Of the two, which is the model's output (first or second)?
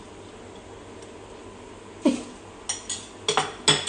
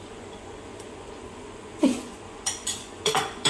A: second